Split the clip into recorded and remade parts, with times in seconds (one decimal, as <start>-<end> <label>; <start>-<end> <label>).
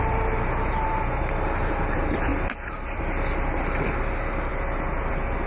0.0-5.5 recorded